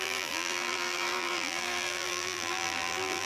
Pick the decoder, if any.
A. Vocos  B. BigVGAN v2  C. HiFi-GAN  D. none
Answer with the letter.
B